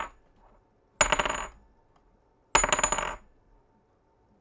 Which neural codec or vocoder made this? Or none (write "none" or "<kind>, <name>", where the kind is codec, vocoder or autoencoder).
none